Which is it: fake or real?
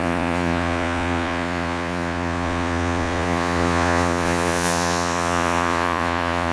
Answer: fake